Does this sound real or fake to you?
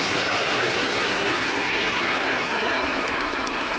fake